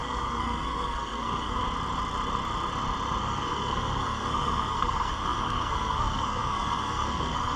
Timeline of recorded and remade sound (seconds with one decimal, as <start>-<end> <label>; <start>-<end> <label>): 0.0-1.6 remade; 1.6-3.2 recorded; 3.2-7.6 remade